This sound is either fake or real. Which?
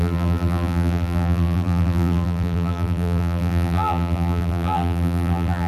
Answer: fake